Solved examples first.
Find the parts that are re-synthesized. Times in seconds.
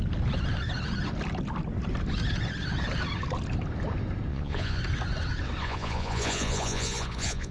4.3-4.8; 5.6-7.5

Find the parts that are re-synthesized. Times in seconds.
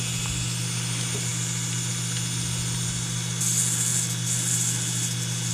none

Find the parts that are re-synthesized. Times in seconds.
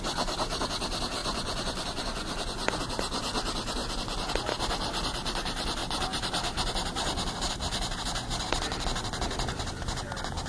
1.2-2.8